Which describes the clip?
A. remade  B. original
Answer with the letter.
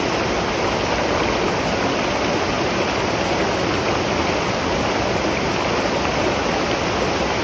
B